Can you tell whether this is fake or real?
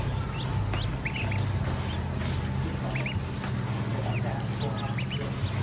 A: real